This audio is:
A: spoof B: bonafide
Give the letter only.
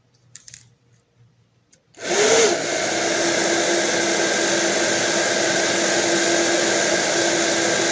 B